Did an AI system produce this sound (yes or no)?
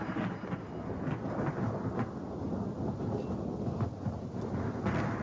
no